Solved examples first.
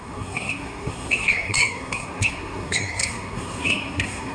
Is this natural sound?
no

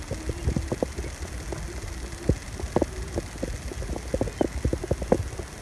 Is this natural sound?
yes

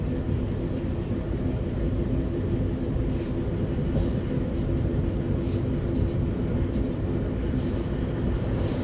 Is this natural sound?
yes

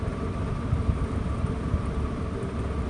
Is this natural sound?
yes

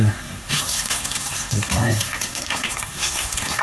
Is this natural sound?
no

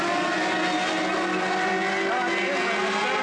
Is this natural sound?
yes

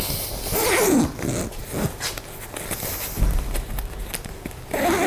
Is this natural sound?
yes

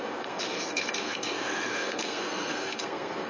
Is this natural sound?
no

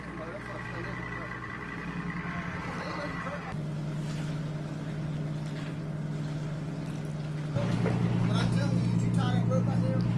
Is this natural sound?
yes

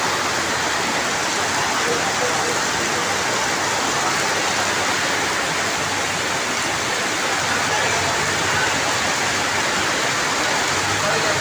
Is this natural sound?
yes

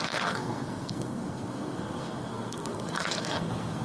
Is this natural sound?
no